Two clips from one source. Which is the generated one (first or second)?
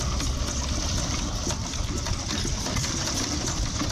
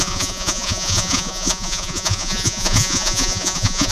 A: second